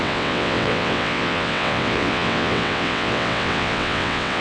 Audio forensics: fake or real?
fake